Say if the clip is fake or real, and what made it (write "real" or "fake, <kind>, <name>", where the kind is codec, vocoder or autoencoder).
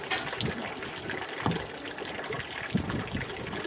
real